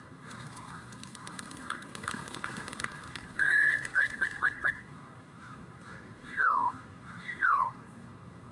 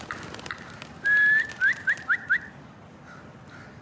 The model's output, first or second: first